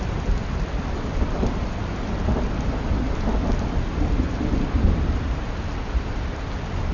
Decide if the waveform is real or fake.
real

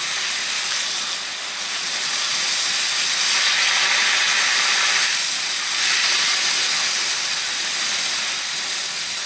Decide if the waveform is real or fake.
real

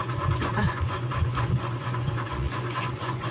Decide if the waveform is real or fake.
fake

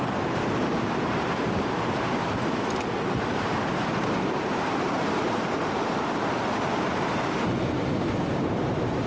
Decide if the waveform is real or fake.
fake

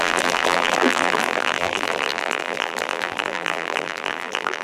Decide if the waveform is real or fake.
fake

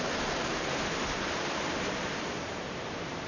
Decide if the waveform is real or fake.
fake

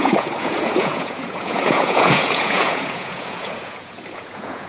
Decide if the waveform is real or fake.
fake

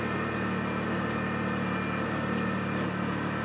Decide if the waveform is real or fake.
real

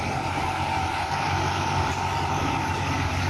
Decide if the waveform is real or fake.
fake